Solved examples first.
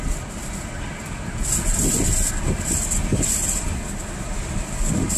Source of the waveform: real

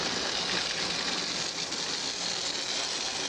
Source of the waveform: real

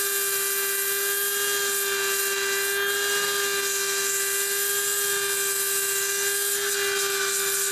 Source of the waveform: real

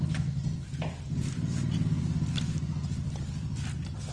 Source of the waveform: real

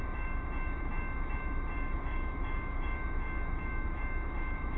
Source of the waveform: fake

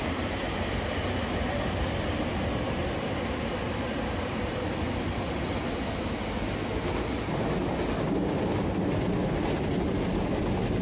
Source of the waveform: real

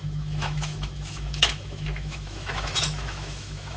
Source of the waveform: fake